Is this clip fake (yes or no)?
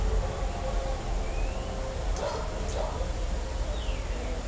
no